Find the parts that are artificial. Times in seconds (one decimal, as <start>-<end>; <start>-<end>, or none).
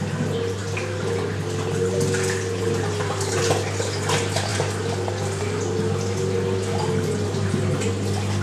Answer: none